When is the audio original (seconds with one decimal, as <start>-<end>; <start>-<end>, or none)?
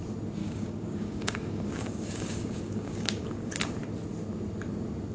0.0-0.4; 3.5-5.1